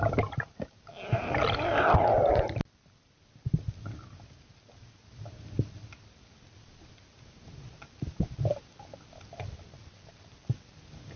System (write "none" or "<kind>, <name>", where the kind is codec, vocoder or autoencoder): none